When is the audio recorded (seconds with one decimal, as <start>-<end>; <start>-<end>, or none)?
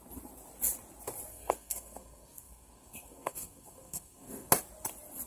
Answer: 0.0-1.3; 4.5-5.3